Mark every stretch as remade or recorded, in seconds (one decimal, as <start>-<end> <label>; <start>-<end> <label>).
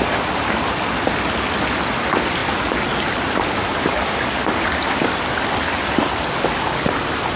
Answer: 0.0-7.4 recorded